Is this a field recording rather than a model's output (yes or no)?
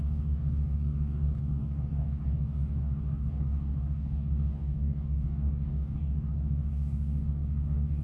no